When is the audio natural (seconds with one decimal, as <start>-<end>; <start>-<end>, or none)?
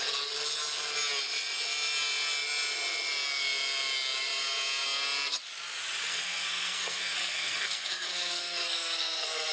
0.0-6.1